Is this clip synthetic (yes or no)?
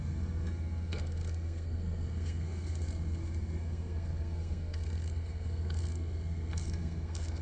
yes